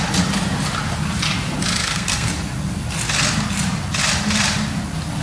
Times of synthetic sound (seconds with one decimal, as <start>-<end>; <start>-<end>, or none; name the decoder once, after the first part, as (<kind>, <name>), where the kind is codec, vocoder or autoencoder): 1.8-2.3 (codec, SNAC)